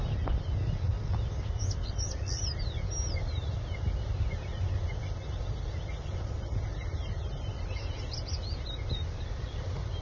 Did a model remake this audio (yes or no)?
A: no